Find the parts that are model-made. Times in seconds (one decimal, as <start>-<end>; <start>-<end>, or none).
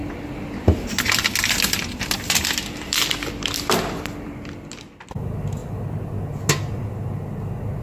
0.0-4.3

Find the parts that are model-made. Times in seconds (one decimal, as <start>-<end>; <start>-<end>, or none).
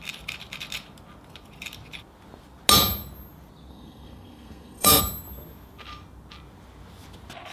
3.7-5.0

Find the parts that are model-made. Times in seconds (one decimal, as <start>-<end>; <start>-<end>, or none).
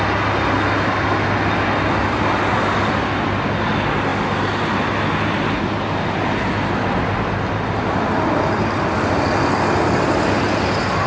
none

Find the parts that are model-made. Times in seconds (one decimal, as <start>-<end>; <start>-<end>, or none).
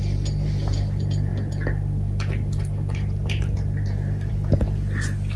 none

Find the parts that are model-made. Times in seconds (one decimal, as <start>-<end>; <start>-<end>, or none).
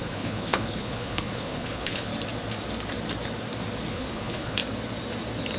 0.0-2.1; 3.9-4.6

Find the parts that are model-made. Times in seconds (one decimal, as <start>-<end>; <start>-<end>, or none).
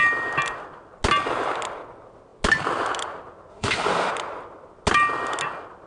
3.5-4.1